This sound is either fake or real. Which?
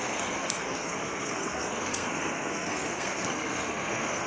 fake